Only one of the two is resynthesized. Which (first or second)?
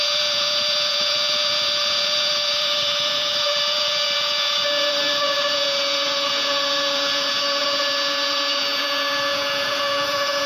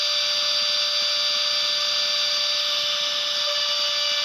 first